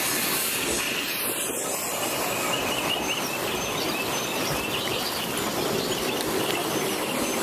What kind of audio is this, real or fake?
real